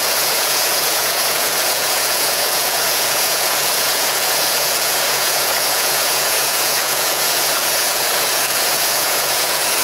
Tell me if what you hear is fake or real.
fake